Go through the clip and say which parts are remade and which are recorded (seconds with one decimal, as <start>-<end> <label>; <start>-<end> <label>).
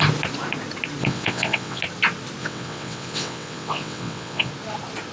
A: 0.0-1.0 recorded; 1.0-1.8 remade; 1.8-2.4 recorded; 2.4-4.5 remade; 4.5-5.1 recorded